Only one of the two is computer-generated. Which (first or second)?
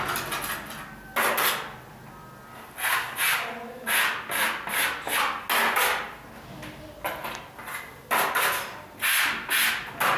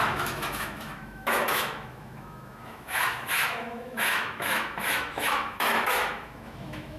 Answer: second